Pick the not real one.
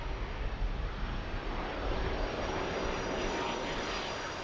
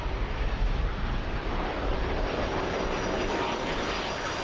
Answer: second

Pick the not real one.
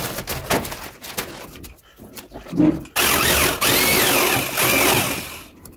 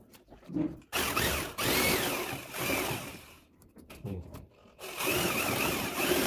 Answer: second